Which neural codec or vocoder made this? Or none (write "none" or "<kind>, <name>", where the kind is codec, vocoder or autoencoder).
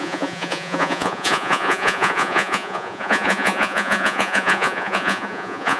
vocoder, Vocos